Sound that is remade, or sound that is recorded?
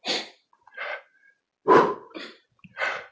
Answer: recorded